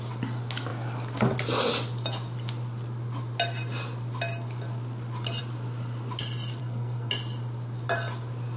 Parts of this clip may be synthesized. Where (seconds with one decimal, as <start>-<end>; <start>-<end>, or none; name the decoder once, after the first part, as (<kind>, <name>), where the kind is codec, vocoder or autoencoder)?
6.6-7.1 (codec, SNAC)